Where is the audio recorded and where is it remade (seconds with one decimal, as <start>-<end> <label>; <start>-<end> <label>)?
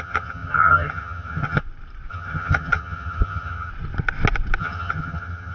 0.0-1.6 remade; 1.6-2.1 recorded; 2.1-3.7 remade; 3.7-4.6 recorded; 4.6-5.5 remade